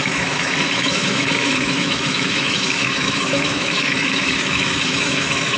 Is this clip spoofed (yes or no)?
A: yes